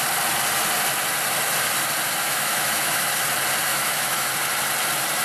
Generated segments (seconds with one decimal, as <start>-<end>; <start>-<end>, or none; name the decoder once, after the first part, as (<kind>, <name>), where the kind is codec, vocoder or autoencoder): 2.2-3.1 (autoencoder, DAC-VAE); 3.7-4.3